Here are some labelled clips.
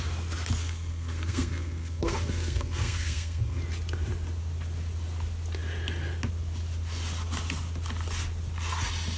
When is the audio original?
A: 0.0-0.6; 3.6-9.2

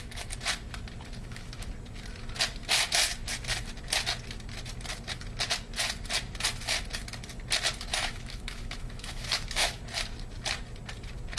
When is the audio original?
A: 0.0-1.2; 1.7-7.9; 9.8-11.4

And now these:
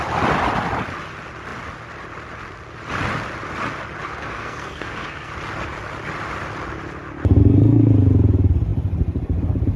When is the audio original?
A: 0.0-4.1; 5.3-7.4; 7.9-9.8